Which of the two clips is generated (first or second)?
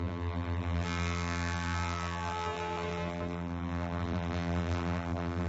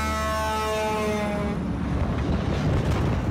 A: first